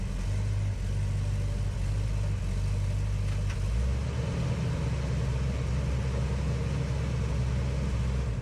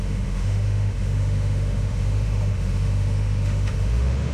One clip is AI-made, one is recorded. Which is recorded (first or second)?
first